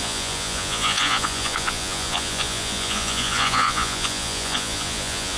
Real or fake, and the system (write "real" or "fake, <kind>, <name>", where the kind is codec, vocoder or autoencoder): fake, vocoder, Vocos